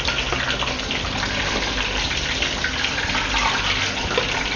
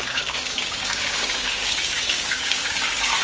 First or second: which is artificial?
second